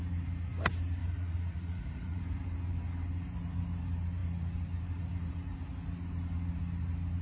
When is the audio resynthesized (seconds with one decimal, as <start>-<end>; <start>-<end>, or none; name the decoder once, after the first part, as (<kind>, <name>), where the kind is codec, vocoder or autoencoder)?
1.0-2.2 (vocoder, Vocos)